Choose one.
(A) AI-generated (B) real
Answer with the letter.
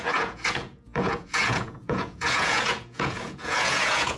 A